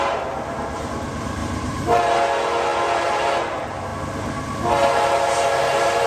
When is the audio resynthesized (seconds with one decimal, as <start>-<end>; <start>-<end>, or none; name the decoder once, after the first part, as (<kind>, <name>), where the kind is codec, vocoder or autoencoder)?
1.4-2.0 (vocoder, BigVGAN v2)